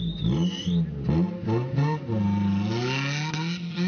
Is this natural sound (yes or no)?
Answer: yes